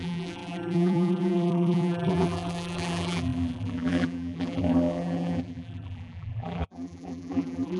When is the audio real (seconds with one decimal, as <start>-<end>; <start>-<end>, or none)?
none